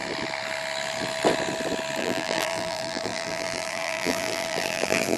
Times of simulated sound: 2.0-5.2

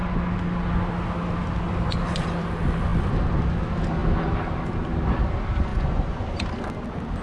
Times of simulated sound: 5.7-6.2

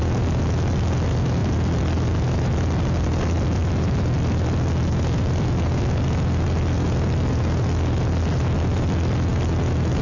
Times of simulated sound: none

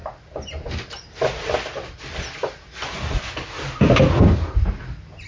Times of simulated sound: none

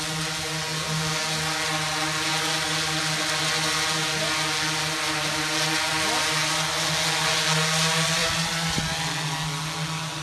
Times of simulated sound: 8.2-8.8

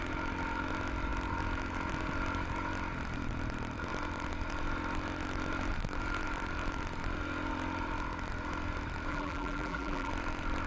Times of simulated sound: 9.1-10.1